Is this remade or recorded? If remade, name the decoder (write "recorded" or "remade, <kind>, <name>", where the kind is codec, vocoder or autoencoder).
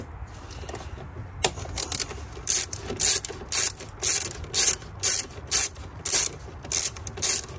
recorded